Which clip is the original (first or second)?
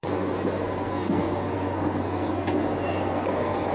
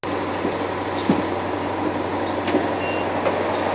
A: second